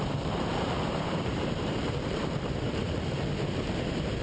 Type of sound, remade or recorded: remade